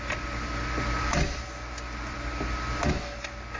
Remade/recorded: recorded